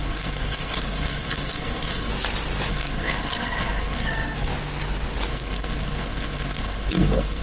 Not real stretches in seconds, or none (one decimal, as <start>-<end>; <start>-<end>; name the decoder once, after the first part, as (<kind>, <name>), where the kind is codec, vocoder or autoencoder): 0.0-2.1 (codec, SNAC); 2.7-4.5; 5.3-7.4